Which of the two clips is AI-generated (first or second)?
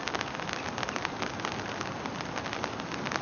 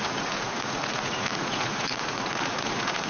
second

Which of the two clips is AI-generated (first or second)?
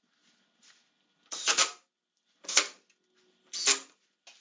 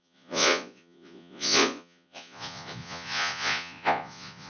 second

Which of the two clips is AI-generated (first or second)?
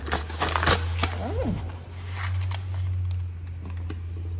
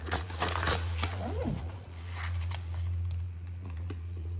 second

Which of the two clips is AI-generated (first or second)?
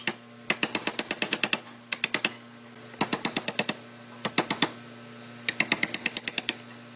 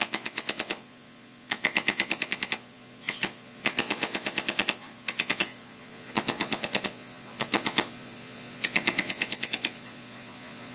second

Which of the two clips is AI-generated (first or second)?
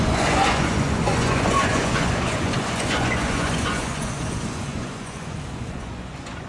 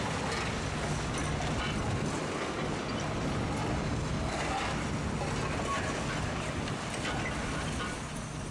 first